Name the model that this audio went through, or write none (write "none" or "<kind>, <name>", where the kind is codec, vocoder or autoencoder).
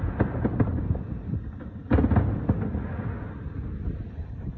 none